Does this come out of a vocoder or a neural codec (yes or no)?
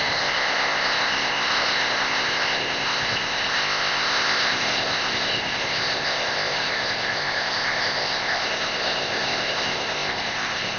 yes